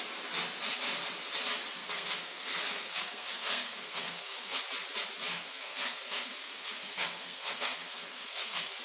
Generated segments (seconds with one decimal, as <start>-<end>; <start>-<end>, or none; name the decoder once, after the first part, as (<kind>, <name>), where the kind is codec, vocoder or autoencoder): 1.8-4.6 (codec, SNAC); 5.3-8.8